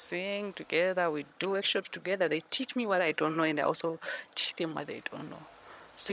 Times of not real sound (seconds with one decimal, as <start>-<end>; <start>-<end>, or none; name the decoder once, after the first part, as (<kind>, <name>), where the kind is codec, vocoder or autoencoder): 1.3-4.8 (vocoder, HiFi-GAN)